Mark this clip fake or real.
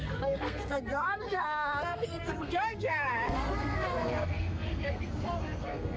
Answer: fake